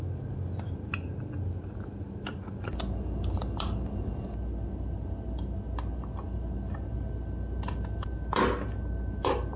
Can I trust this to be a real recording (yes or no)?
yes